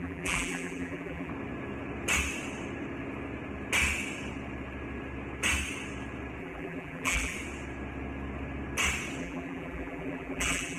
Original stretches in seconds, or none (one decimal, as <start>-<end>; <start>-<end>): 1.3-6.4; 7.3-9.2